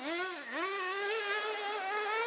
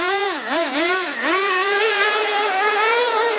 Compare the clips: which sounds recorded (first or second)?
first